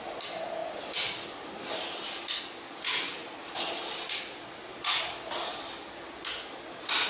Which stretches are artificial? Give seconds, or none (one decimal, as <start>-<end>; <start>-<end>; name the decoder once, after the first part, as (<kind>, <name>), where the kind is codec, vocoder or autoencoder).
none